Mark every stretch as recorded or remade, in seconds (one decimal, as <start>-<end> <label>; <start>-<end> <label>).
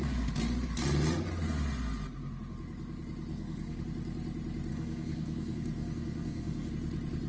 0.0-3.3 recorded; 3.3-3.8 remade; 3.8-4.7 recorded; 4.7-6.7 remade; 6.7-7.3 recorded